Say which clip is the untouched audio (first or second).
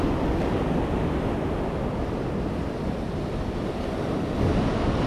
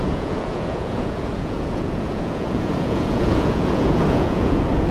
first